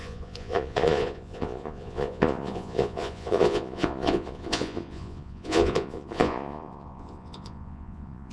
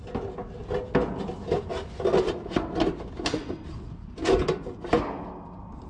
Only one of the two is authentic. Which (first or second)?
second